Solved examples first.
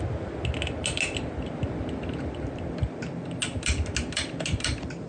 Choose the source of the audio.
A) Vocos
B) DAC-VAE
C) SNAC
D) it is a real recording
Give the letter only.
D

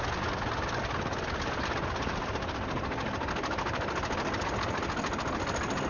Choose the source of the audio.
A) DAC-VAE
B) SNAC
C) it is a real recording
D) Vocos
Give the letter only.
C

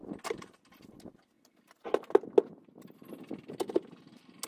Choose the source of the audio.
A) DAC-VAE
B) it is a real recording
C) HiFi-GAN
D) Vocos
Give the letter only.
B